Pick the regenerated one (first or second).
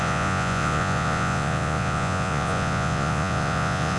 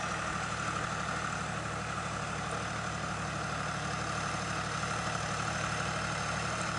first